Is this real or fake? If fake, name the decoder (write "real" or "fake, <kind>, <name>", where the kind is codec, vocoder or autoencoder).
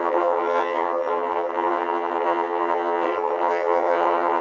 fake, vocoder, HiFi-GAN